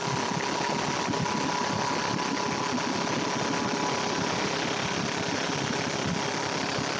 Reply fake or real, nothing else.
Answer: real